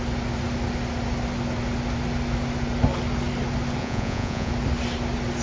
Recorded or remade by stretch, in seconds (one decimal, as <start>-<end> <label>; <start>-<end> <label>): 0.0-3.8 recorded; 3.8-4.5 remade; 4.5-5.4 recorded